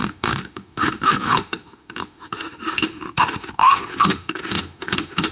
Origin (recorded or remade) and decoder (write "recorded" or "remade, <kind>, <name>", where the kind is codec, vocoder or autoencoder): remade, autoencoder, DAC-VAE